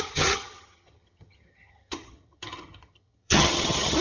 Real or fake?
fake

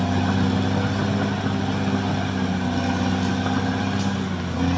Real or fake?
real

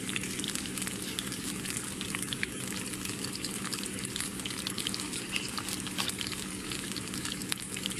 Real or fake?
fake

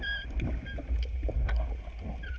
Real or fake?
real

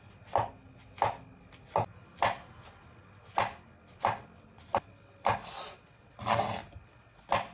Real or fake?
real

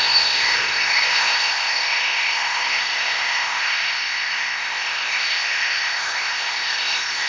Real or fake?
fake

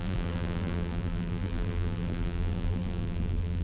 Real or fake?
fake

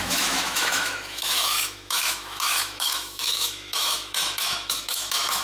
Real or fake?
fake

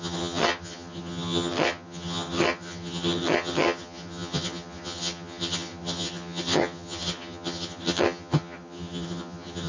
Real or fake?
fake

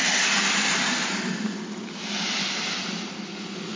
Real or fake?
real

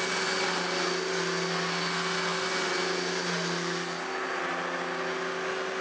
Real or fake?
real